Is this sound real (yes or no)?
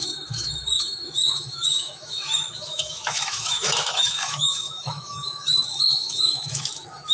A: no